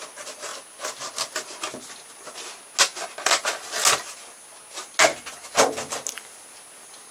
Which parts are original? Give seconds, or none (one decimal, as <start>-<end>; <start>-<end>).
0.0-7.1